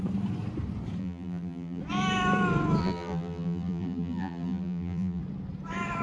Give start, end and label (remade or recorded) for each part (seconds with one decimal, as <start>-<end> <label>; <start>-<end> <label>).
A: 0.0-1.0 recorded; 1.0-1.8 remade; 1.8-2.8 recorded; 2.8-5.2 remade; 5.2-6.0 recorded